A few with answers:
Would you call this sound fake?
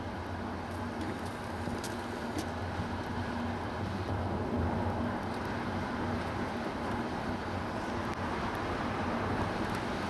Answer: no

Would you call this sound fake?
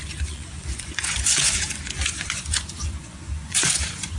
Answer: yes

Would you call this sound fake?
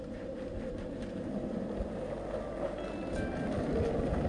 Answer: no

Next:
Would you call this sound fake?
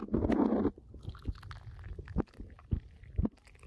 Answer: no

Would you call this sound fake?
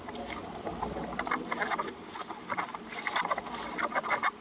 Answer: no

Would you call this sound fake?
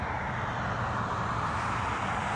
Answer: no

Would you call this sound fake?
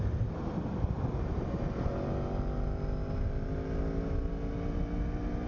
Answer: no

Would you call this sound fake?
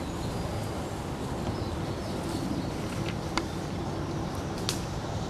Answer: no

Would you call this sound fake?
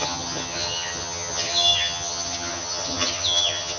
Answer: yes